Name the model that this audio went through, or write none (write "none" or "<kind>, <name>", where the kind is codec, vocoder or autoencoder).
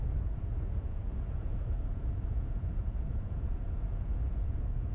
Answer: vocoder, Vocos